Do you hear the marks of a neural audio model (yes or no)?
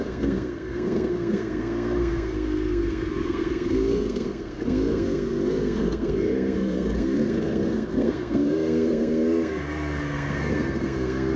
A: yes